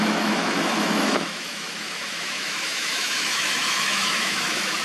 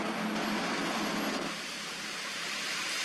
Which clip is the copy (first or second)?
first